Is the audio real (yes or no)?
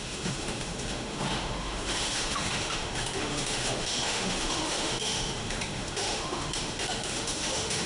no